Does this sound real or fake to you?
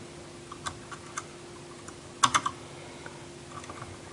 real